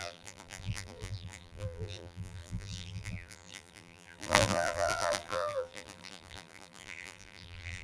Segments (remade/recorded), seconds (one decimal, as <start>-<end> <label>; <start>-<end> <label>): 0.0-7.8 remade